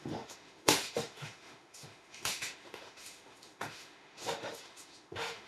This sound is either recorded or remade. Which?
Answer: remade